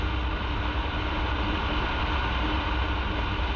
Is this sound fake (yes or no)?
no